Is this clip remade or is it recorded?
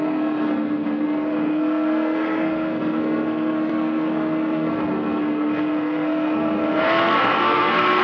remade